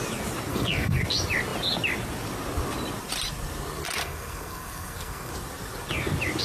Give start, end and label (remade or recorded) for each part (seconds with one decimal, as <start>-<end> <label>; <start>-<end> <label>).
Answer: 0.0-0.5 recorded; 0.5-1.0 remade; 1.0-4.0 recorded; 4.0-5.3 remade; 5.3-6.4 recorded